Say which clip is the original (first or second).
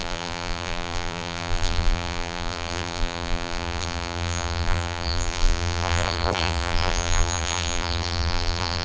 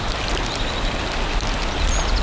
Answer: second